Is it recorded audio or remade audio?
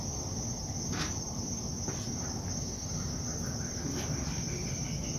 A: recorded